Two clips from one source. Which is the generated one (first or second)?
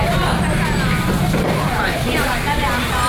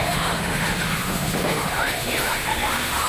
second